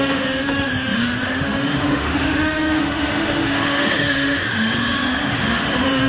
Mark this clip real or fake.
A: fake